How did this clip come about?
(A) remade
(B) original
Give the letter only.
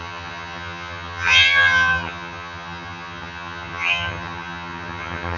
A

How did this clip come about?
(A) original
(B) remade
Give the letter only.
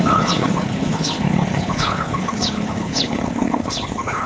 B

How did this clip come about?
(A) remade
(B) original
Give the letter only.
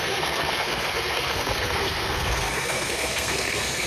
A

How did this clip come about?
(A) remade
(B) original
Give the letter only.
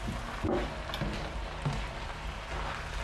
B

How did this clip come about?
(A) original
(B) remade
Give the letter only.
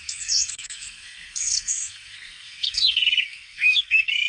B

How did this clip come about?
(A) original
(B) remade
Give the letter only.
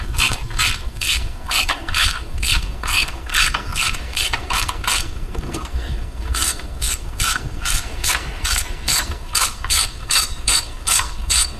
B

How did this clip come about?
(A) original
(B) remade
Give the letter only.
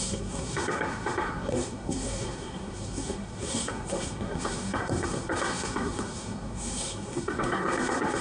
B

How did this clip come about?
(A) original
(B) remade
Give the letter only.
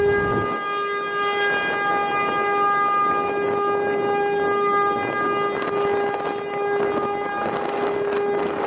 A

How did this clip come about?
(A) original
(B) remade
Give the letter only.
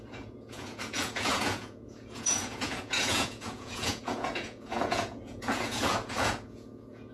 B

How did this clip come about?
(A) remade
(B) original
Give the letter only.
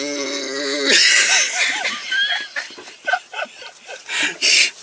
B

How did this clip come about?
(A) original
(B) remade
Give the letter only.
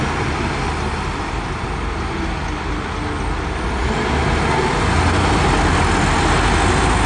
A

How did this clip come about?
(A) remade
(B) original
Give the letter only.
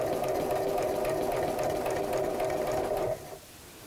B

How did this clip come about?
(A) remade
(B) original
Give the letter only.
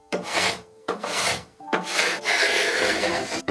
A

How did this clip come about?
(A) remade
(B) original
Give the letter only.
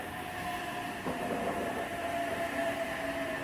B